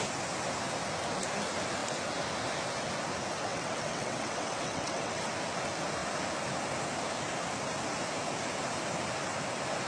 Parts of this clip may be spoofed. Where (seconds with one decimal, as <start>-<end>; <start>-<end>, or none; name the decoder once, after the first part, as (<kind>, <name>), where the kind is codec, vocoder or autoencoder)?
3.5-5.3 (vocoder, WaveNeXt)